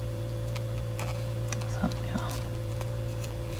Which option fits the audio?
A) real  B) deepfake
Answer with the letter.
B